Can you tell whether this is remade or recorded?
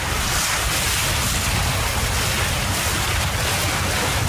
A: recorded